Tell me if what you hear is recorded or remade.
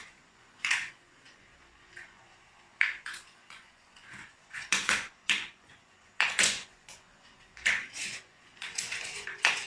remade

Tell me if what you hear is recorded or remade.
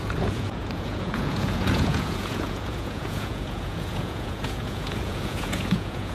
remade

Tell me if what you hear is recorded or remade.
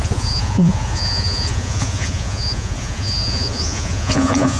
remade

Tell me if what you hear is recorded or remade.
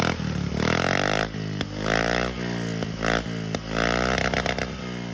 recorded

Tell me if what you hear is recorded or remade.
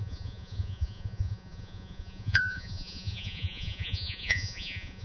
remade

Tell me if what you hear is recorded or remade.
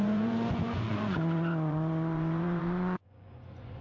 remade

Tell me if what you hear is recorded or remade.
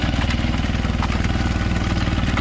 recorded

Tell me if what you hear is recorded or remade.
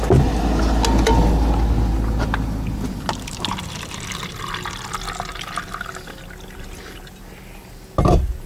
recorded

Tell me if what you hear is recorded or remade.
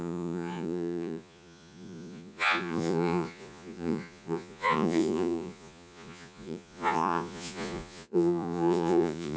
remade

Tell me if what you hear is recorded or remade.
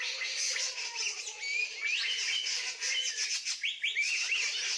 recorded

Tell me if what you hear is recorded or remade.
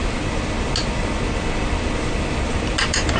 recorded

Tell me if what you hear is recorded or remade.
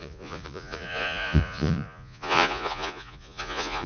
remade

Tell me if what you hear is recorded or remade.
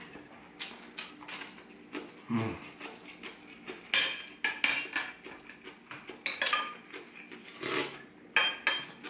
recorded